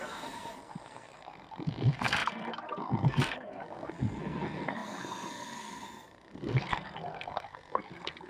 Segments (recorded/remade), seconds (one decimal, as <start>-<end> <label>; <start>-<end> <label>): 0.0-8.3 remade